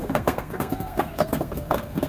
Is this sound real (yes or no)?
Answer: no